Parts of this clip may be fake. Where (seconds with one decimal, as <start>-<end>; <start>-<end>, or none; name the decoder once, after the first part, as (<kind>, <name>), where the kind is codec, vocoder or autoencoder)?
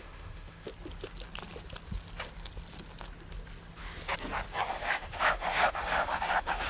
0.0-0.7 (autoencoder, DAC-VAE); 4.7-6.7